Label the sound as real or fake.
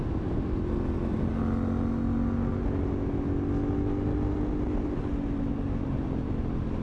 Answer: real